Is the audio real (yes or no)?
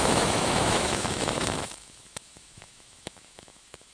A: no